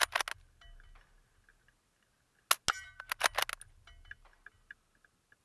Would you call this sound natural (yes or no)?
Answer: yes